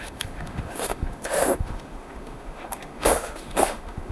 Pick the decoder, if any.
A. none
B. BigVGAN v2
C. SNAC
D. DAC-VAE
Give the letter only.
D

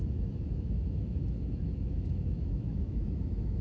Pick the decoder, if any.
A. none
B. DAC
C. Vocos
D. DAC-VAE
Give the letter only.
D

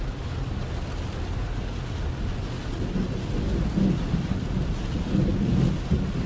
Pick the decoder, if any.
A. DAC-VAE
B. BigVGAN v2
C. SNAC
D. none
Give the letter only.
D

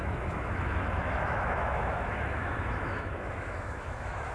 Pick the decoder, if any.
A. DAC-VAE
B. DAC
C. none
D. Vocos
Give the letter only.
A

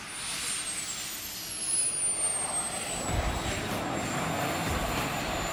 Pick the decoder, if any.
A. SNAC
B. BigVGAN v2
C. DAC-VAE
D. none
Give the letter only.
D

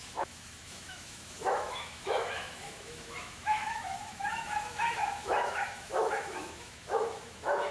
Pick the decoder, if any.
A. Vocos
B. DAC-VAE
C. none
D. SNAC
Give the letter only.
B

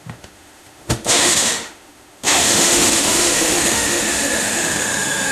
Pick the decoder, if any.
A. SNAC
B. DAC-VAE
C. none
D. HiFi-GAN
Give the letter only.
B